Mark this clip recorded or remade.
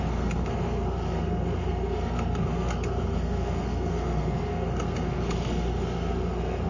remade